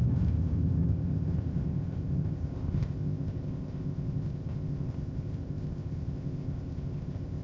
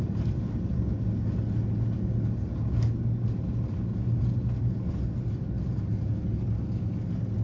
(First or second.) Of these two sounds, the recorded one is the second